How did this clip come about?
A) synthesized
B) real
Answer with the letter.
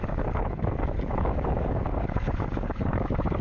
A